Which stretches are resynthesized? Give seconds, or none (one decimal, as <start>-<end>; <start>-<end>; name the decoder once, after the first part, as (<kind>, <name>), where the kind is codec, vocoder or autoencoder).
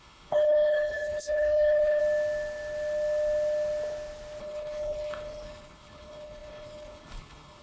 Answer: 0.0-2.0 (codec, HILCodec); 4.4-7.6